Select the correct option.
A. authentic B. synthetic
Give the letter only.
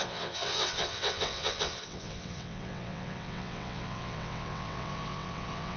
B